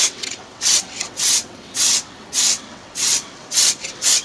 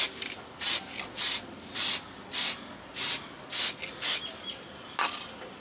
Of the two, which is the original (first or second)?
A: second